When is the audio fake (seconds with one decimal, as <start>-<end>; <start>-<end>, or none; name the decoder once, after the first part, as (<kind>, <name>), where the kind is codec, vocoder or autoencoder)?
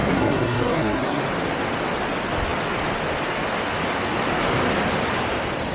0.0-1.2 (codec, SNAC)